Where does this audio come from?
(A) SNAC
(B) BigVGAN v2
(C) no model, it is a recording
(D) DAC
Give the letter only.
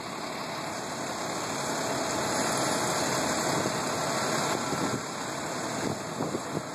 C